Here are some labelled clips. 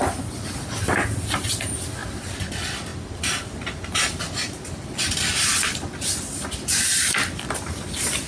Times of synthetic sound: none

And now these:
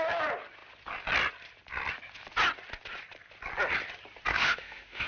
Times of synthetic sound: 4.3-5.1 (autoencoder, DAC-VAE)

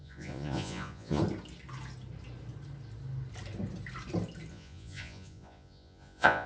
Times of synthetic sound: 0.0-1.2 (vocoder, Vocos); 4.5-6.5